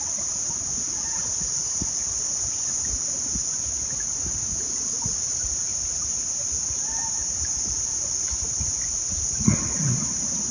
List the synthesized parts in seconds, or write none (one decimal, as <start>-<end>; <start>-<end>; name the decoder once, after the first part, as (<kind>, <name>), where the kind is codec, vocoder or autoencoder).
none